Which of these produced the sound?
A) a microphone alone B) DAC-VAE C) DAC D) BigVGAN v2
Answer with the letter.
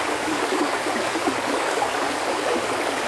C